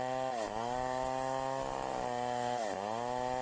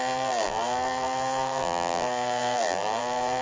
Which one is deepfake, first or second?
second